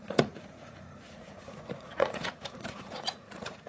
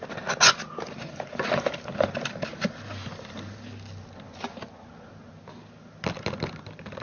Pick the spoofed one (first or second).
first